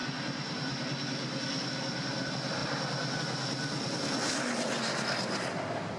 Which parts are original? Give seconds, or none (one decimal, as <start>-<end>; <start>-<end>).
0.0-6.0